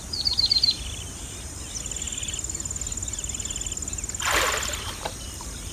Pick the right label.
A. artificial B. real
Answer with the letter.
B